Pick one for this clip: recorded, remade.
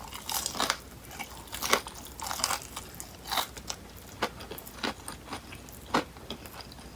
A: recorded